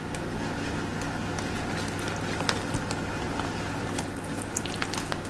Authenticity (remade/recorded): recorded